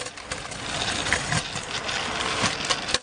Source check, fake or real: real